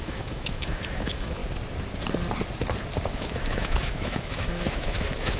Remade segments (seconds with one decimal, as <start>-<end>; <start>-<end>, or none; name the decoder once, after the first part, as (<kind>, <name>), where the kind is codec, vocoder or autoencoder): 0.0-1.4 (autoencoder, DAC-VAE); 3.1-5.4